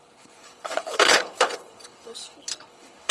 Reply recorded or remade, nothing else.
remade